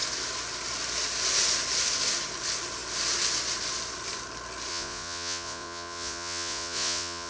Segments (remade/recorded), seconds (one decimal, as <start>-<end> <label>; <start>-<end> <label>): 0.0-4.7 recorded; 4.7-7.3 remade